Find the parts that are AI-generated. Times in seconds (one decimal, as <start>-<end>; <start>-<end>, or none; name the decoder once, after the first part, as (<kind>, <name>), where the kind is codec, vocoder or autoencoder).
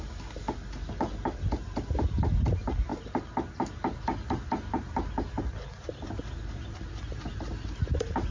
none